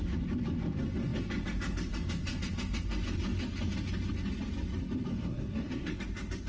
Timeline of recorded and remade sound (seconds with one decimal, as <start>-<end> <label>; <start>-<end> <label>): 0.0-5.1 recorded; 5.1-6.0 remade; 6.0-6.5 recorded